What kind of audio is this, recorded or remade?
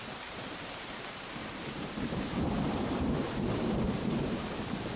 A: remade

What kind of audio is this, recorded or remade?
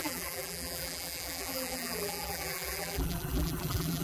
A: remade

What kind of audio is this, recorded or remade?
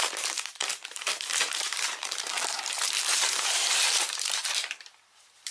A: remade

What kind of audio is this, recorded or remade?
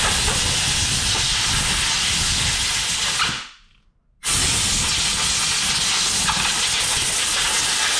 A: recorded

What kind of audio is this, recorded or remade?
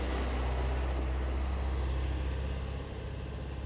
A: recorded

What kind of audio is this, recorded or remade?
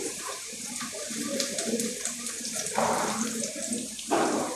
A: remade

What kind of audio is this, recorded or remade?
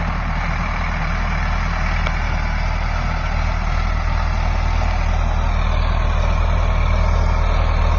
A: recorded